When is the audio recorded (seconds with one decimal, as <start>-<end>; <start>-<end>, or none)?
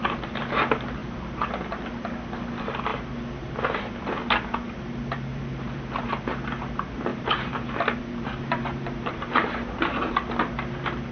0.0-5.3; 5.8-7.1; 10.2-11.1